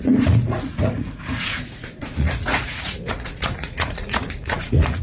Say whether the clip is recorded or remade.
remade